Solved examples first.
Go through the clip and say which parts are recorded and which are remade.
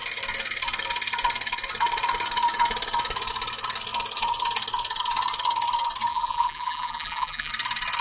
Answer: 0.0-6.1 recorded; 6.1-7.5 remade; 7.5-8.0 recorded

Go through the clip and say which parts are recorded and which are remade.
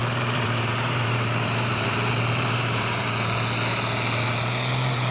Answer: 0.0-3.1 remade; 3.1-5.1 recorded